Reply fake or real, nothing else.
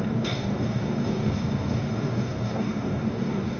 fake